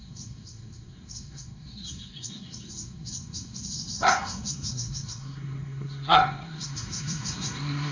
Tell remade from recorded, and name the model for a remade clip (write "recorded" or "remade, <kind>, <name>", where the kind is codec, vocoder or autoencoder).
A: remade, codec, SNAC